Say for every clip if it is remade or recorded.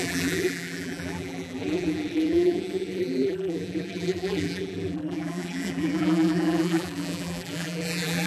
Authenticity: remade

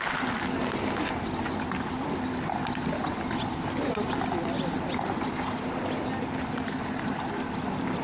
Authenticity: recorded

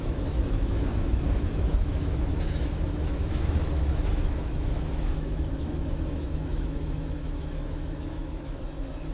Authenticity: remade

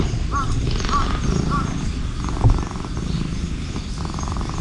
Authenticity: recorded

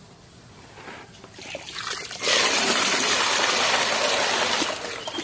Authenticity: recorded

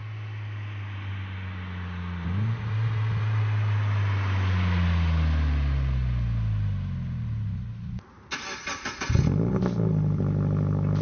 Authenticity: recorded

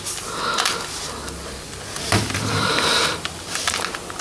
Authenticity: recorded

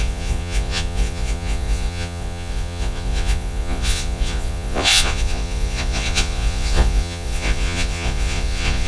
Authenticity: remade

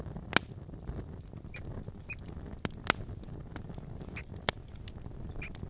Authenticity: recorded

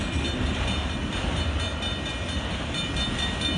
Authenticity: recorded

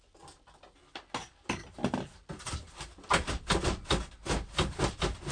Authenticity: recorded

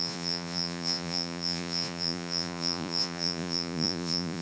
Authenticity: remade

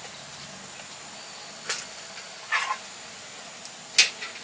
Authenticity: recorded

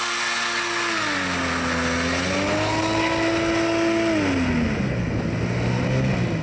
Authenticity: recorded